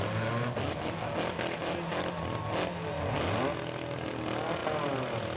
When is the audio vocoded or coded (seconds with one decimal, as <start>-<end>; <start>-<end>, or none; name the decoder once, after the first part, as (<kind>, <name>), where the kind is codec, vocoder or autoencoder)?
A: none